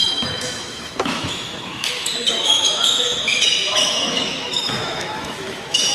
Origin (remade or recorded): remade